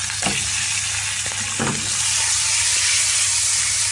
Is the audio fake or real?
real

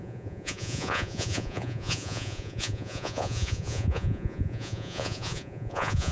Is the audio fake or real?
fake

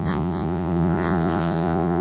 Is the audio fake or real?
fake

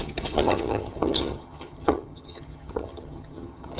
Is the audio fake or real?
fake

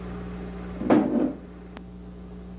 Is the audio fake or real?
real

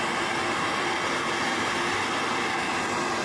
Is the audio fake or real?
real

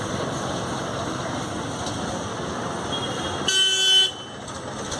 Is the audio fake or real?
real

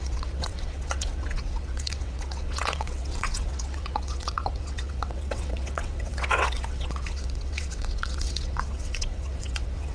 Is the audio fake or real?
fake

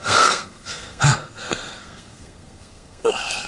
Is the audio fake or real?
fake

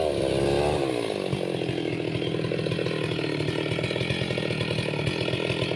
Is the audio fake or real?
real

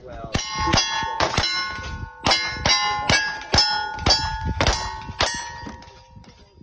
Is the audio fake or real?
real